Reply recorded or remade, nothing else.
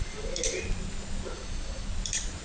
remade